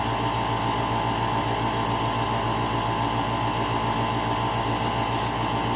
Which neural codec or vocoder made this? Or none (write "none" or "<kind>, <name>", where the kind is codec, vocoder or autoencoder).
none